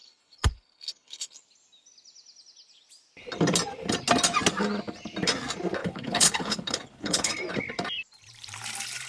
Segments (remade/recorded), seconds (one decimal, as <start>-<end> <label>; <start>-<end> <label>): 0.0-1.4 remade; 1.4-5.8 recorded; 5.8-7.3 remade; 7.3-9.1 recorded